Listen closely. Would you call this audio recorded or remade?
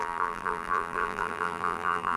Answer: remade